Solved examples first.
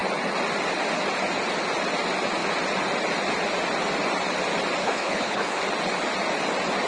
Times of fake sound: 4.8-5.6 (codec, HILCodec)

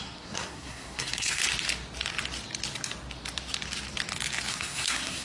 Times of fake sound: 0.0-1.4 (codec, SNAC); 4.5-5.2

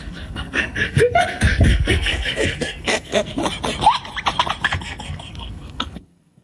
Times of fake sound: 0.0-3.4 (codec, SNAC); 4.8-6.4

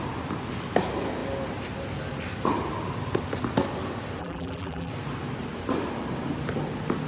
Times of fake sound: 4.2-4.9 (vocoder, BigVGAN v2)

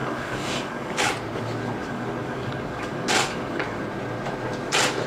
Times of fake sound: 0.0-1.1 (codec, DAC); 1.8-3.8

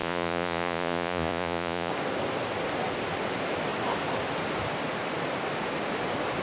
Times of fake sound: 0.0-1.9 (vocoder, Vocos)